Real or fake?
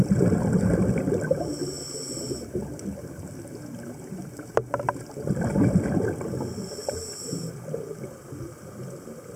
real